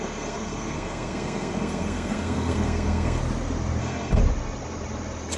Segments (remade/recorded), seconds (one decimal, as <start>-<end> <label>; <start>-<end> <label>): 0.0-3.2 remade; 3.2-3.8 recorded; 3.8-4.2 remade; 4.2-5.4 recorded